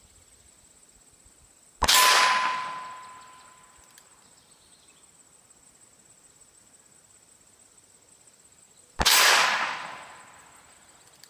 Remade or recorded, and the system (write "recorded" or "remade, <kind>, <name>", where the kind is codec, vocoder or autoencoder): recorded